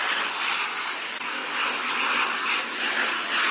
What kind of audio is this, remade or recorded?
recorded